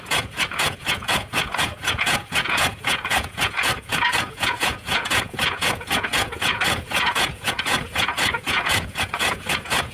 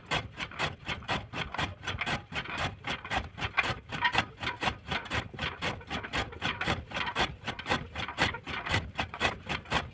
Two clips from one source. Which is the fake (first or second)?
first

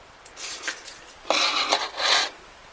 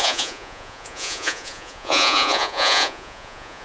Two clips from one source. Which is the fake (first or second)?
second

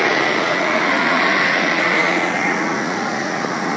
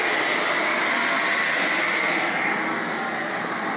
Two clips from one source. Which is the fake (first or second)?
first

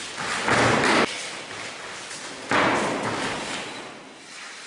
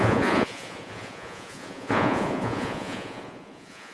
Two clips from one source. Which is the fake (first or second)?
second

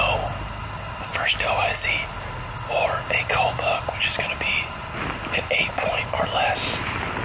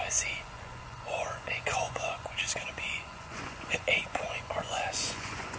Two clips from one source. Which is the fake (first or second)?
second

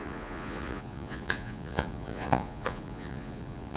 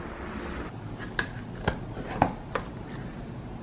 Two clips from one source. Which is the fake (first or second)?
first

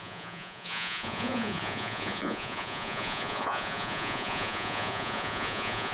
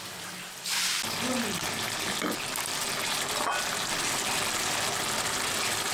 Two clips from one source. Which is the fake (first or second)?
first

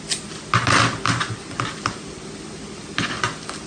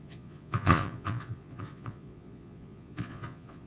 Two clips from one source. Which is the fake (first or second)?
second